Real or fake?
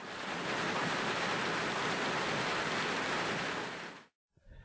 real